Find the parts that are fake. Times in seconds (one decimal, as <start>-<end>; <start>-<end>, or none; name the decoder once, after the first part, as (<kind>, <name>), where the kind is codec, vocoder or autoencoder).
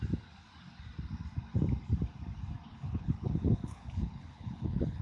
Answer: 2.7-5.0 (codec, HILCodec)